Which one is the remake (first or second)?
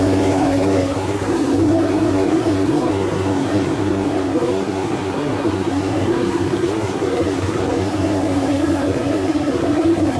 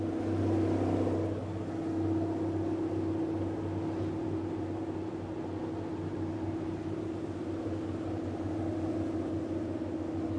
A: first